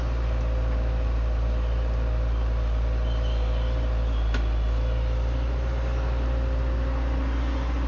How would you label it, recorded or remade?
recorded